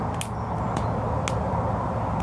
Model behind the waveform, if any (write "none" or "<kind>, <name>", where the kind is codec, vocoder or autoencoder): none